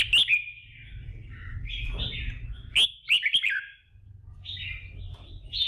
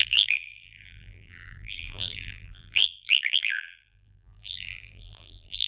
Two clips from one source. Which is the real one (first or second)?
first